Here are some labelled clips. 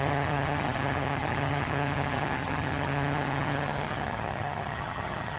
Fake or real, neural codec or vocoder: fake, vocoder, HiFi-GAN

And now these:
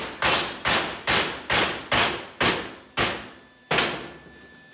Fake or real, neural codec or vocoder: real